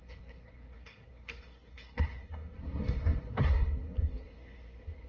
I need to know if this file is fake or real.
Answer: fake